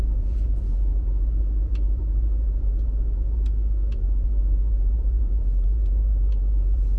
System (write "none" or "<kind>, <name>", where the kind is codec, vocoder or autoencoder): vocoder, BigVGAN v2